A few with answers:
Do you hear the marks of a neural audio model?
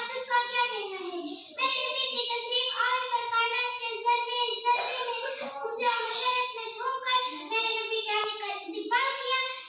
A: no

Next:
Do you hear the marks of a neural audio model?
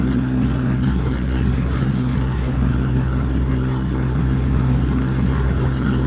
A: yes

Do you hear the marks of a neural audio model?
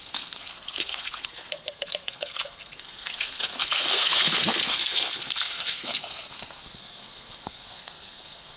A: yes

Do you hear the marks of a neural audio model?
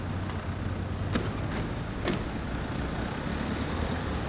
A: no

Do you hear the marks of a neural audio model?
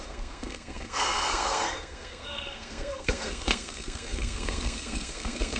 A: yes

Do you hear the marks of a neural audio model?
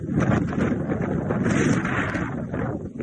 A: no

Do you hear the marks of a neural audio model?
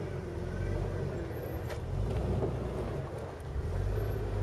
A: no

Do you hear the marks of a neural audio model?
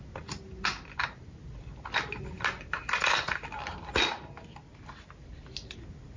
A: no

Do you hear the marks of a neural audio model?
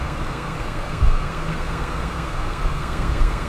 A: yes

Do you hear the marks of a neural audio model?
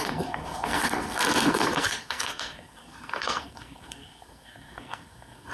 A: yes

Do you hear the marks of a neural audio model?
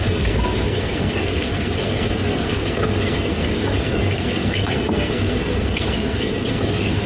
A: yes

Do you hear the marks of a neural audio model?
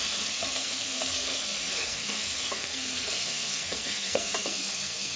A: yes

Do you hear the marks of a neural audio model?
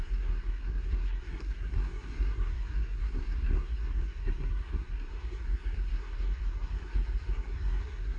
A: yes